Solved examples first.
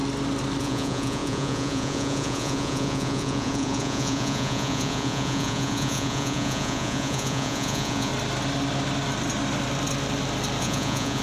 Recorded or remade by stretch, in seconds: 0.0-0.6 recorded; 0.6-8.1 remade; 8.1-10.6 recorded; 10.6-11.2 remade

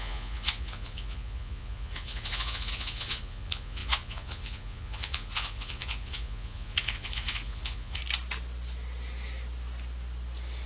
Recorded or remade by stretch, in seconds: 0.0-8.0 remade; 8.0-10.7 recorded

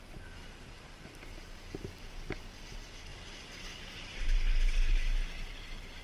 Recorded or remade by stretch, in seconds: 0.0-6.0 recorded

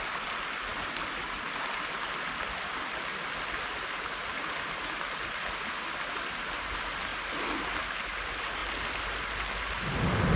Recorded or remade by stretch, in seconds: 0.0-10.4 recorded

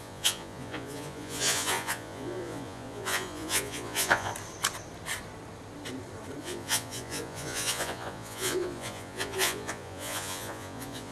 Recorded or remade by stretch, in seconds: 0.0-4.3 remade; 4.3-6.4 recorded; 6.4-11.1 remade

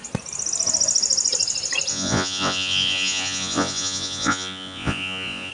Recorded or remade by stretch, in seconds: 0.0-1.9 recorded; 1.9-5.5 remade

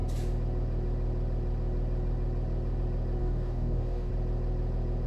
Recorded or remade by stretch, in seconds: 0.0-3.2 recorded; 3.2-4.1 remade; 4.1-5.1 recorded